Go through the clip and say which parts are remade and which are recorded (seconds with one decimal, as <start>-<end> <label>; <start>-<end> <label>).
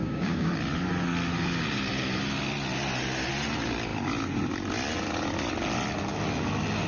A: 0.0-0.5 remade; 0.5-6.9 recorded